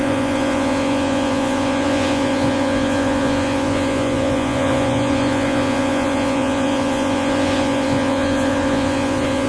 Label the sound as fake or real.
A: fake